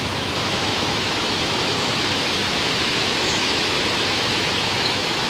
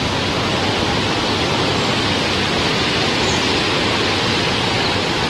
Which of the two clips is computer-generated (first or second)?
first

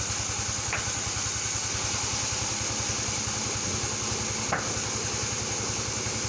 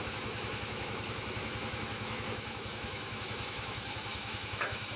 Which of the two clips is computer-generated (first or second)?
second